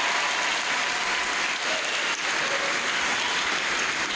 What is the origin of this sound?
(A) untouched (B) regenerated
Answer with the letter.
A